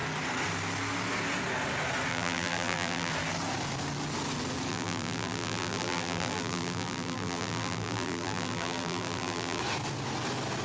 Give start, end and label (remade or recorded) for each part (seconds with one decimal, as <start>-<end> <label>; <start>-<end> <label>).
0.0-2.1 recorded; 2.1-3.1 remade; 3.1-4.7 recorded; 4.7-9.6 remade; 9.6-10.6 recorded